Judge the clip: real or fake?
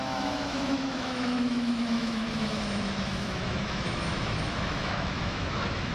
fake